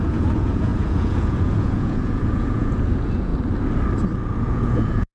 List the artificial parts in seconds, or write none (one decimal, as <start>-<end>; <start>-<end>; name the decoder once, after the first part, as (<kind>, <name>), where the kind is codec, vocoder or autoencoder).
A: 0.0-3.3 (vocoder, Vocos); 4.4-5.1